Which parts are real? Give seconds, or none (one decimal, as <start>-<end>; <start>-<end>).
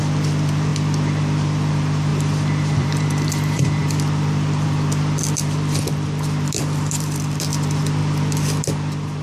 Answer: none